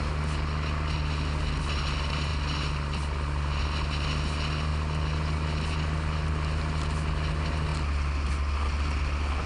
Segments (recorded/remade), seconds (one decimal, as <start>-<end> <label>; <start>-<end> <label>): 0.0-9.5 recorded